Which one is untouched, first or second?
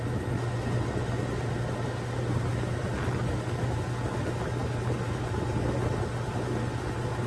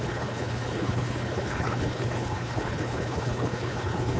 first